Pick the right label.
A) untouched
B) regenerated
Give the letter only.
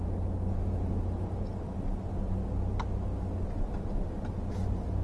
A